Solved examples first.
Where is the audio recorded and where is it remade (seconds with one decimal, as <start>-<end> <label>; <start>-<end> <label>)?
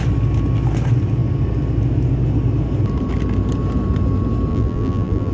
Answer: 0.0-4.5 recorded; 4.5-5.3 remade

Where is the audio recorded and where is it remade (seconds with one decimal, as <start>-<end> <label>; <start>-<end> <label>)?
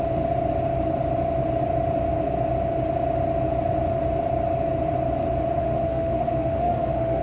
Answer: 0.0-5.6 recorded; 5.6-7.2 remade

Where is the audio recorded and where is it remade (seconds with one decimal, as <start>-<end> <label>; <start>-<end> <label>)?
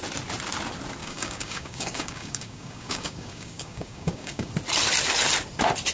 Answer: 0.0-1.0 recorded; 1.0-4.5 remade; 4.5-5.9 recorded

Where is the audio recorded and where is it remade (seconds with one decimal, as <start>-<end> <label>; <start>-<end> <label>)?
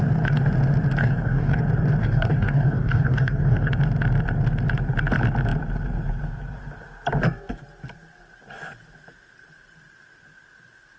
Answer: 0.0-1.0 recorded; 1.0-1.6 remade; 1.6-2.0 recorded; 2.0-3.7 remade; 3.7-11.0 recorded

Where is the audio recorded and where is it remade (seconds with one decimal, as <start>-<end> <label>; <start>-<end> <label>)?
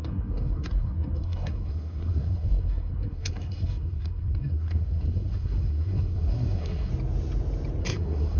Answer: 0.0-6.9 remade; 6.9-7.8 recorded; 7.8-8.4 remade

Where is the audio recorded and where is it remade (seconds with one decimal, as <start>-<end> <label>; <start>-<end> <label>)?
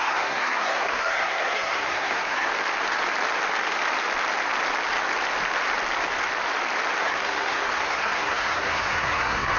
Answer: 0.0-2.5 remade; 2.5-7.0 recorded; 7.0-9.6 remade